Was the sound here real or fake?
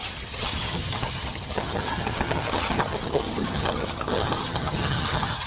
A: fake